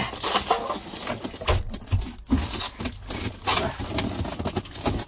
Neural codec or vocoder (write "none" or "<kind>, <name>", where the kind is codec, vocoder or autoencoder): none